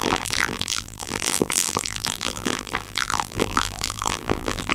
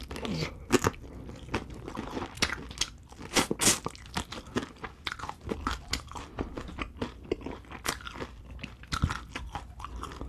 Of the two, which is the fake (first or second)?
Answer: first